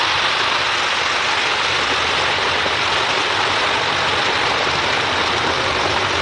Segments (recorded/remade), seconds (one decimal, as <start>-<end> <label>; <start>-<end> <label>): 0.0-6.2 recorded